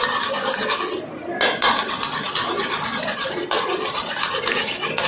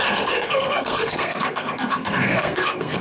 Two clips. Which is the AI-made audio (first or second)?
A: second